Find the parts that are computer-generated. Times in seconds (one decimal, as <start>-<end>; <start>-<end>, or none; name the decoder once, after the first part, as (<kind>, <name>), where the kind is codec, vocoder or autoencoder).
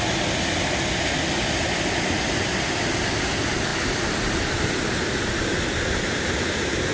none